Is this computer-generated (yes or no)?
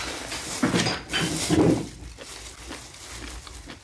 no